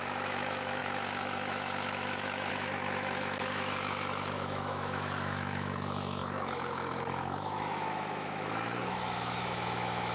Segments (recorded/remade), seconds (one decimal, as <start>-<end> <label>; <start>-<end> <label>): 0.0-10.1 remade